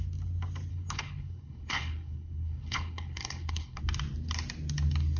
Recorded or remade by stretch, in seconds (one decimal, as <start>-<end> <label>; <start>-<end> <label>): 0.0-0.7 recorded; 0.7-3.8 remade; 3.8-5.2 recorded